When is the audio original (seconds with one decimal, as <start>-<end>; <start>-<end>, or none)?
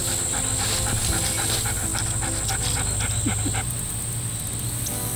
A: 0.0-5.2